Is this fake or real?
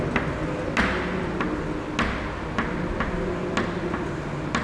real